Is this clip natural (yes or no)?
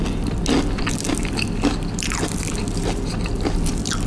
yes